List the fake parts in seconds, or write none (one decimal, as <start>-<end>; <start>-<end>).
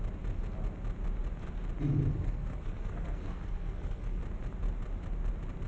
2.1-4.2